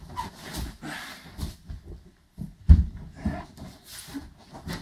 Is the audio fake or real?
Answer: real